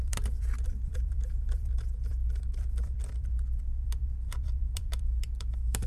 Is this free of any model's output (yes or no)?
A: no